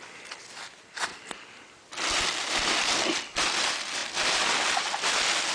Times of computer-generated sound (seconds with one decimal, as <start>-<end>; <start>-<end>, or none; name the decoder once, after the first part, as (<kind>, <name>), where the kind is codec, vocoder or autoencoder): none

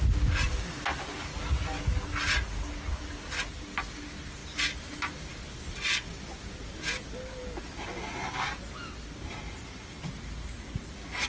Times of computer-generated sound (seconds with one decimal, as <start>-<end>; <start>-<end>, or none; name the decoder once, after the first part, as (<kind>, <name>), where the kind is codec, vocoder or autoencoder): none

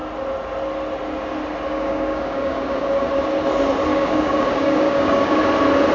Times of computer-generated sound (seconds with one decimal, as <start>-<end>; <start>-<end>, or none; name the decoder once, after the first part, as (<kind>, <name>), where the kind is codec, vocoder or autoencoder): 1.7-3.1 (codec, DAC); 3.9-5.4